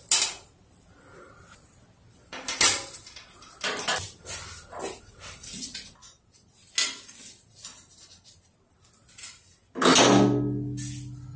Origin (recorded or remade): recorded